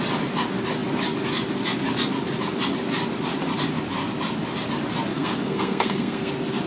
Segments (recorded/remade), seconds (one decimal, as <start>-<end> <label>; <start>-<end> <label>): 0.0-5.1 recorded; 5.1-6.3 remade; 6.3-6.7 recorded